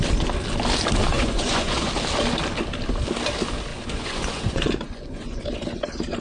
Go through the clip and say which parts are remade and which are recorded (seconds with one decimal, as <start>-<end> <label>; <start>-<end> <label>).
0.0-1.1 recorded; 1.1-1.9 remade; 1.9-3.7 recorded; 3.7-5.4 remade; 5.4-6.2 recorded

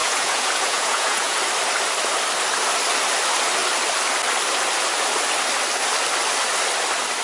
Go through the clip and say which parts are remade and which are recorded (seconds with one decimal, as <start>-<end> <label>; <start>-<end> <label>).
0.0-1.4 remade; 1.4-7.2 recorded

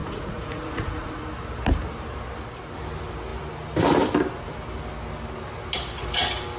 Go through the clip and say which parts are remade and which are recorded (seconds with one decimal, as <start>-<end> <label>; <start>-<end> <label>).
0.0-1.2 remade; 1.2-6.6 recorded

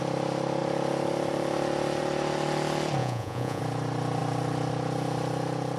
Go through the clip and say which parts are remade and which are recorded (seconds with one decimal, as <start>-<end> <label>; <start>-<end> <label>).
0.0-3.0 recorded; 3.0-3.6 remade; 3.6-5.8 recorded

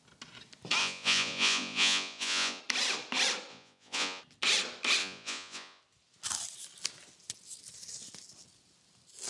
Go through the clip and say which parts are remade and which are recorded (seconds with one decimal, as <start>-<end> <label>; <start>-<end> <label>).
0.0-0.8 recorded; 0.8-2.6 remade; 2.6-3.5 recorded; 3.5-4.2 remade; 4.2-5.0 recorded; 5.0-5.8 remade; 5.8-9.3 recorded

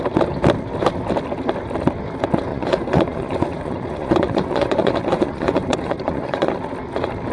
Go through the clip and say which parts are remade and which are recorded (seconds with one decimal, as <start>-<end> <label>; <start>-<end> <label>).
0.0-2.5 recorded; 2.5-6.5 remade; 6.5-7.3 recorded

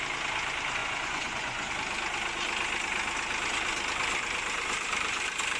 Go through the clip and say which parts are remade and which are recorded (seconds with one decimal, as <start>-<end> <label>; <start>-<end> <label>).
0.0-0.8 recorded; 0.8-1.7 remade; 1.7-5.6 recorded